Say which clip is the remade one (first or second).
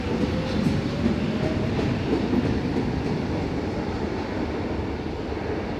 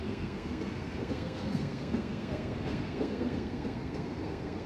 second